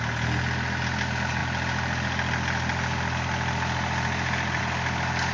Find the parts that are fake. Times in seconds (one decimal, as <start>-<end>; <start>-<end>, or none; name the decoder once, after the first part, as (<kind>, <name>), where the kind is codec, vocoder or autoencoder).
none

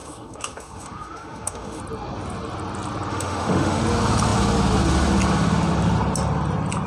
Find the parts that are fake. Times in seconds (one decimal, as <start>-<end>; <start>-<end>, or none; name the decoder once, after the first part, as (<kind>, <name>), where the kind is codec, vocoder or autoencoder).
0.0-1.8 (autoencoder, DAC-VAE); 3.1-3.8

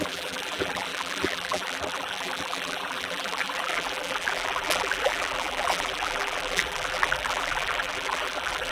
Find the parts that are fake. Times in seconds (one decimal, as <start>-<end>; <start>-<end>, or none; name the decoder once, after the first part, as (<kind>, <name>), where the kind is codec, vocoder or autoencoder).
0.0-8.7 (vocoder, BigVGAN v2)